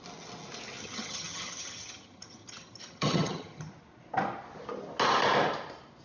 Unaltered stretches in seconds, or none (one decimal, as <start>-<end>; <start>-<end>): 0.0-0.8; 3.7-6.0